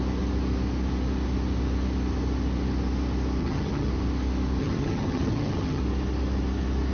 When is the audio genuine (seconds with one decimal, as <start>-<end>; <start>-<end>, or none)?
0.0-3.4; 3.9-4.6; 5.8-6.9

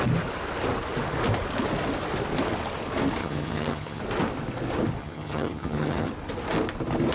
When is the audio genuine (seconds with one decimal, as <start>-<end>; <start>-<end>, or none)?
0.0-3.2; 4.0-5.0; 6.1-7.1

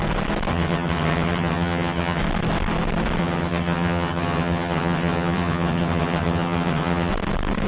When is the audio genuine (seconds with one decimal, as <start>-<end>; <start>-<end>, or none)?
0.0-0.5; 2.2-3.2; 7.1-7.7

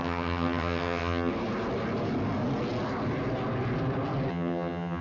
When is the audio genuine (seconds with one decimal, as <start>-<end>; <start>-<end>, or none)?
1.3-4.3

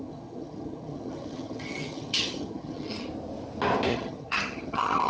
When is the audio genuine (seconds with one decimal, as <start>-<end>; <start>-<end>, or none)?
3.1-3.9

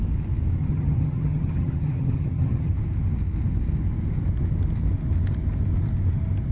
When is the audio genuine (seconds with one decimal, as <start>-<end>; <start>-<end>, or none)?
0.0-0.6; 2.7-6.5

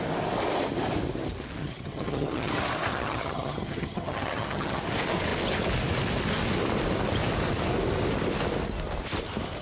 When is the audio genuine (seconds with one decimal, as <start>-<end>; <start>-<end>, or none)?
0.0-1.6; 2.5-2.9; 4.8-9.6